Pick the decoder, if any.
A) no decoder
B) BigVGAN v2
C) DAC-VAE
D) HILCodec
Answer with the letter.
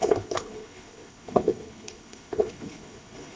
D